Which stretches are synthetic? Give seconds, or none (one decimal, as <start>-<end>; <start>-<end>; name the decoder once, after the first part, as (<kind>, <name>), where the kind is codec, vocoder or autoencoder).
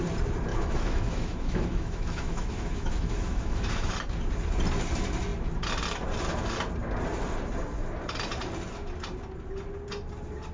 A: 0.5-3.9 (autoencoder, DAC-VAE)